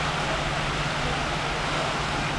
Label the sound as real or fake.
real